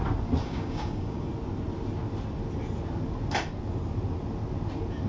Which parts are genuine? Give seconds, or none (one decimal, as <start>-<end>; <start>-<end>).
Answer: 0.0-0.4; 1.3-5.1